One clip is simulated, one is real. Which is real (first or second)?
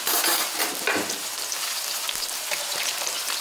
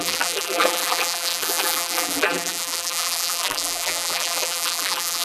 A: first